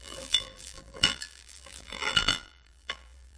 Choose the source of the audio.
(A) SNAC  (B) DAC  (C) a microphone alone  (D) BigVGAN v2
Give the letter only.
D